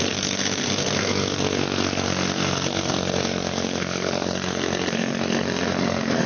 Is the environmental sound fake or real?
fake